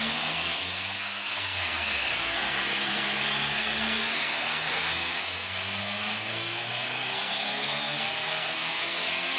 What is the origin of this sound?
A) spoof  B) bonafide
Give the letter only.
A